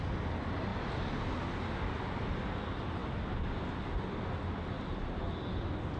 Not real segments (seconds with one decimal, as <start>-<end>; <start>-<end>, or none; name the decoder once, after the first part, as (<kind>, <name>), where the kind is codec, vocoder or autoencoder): none